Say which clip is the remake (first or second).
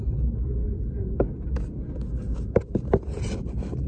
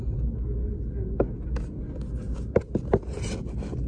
first